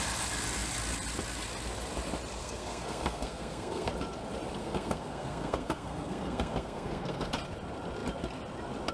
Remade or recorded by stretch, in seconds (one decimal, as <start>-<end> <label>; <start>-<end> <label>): 0.0-2.4 recorded; 2.4-3.9 remade; 3.9-4.6 recorded; 4.6-7.3 remade; 7.3-8.9 recorded